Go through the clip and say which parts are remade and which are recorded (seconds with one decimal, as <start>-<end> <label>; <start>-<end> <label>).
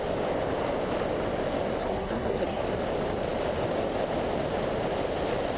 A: 0.0-1.8 recorded; 1.8-2.6 remade; 2.6-5.6 recorded